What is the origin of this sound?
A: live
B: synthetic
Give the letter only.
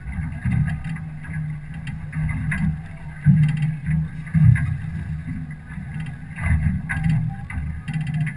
A